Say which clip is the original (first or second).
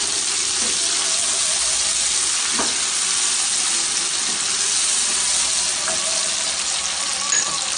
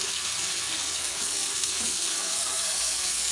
first